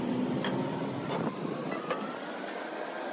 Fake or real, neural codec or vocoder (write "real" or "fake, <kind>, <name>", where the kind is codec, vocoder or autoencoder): real